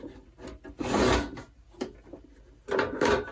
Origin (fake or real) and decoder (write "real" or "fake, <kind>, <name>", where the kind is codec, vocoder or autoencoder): real